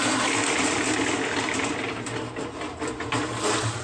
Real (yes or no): yes